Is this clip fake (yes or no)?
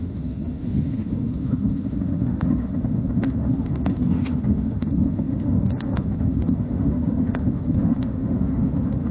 yes